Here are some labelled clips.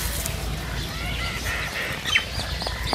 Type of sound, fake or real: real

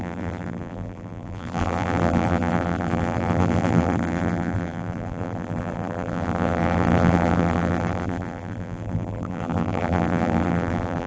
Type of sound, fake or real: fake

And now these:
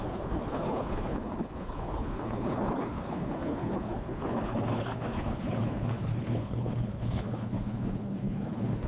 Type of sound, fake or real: fake